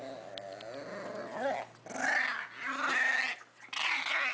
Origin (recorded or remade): recorded